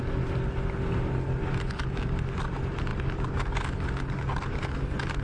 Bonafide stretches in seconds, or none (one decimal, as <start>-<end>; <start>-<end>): 0.0-5.2